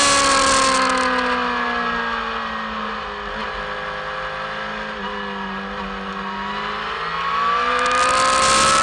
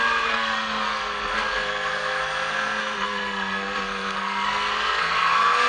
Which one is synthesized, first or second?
second